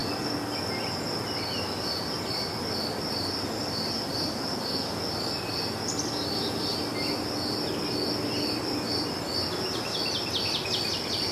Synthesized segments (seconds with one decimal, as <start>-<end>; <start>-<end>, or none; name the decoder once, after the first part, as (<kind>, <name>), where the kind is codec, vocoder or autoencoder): none